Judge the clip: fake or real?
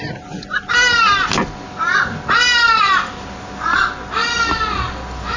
real